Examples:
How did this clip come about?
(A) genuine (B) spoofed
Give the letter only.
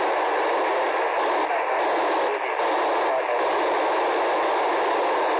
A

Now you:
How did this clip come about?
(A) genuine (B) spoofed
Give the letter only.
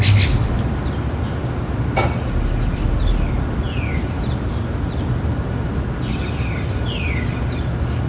A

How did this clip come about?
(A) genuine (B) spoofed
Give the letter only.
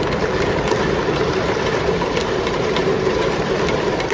A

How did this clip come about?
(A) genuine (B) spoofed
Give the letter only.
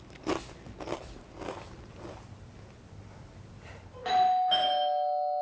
A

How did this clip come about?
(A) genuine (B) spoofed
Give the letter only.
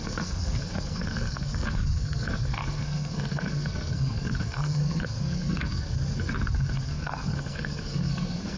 B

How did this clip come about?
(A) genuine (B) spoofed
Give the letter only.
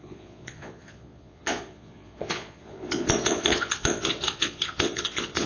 B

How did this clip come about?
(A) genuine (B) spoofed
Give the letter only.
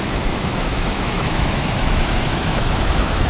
B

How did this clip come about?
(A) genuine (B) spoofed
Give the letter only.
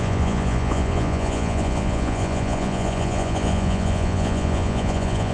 B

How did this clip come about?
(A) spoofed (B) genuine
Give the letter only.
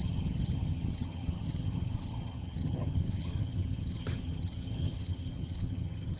A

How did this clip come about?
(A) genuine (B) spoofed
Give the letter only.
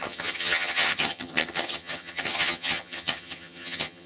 B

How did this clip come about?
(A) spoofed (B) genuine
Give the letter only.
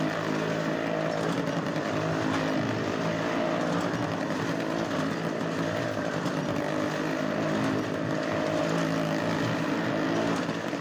B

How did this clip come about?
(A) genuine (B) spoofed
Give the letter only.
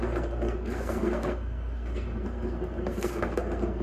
B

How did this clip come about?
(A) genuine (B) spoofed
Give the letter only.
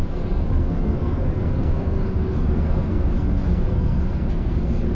B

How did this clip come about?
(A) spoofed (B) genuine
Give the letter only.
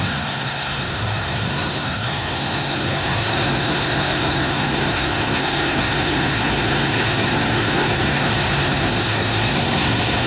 A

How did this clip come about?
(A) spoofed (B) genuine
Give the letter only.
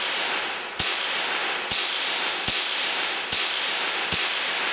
B